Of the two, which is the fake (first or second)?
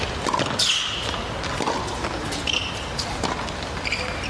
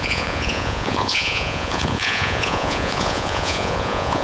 second